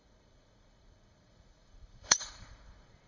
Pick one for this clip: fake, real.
fake